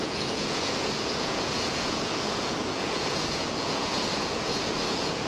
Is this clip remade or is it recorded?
remade